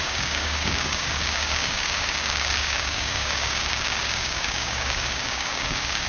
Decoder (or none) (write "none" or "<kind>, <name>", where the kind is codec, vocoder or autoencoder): codec, DAC